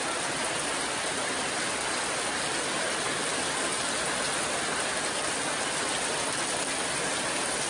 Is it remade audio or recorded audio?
recorded